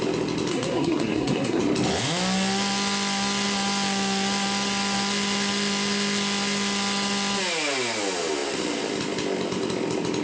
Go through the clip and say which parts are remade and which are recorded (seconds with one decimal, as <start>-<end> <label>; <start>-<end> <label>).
0.0-0.5 recorded; 0.5-1.6 remade; 1.6-10.2 recorded